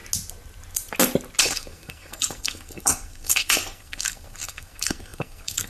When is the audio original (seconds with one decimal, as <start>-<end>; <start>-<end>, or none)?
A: 0.0-1.4